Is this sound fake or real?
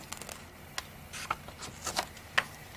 real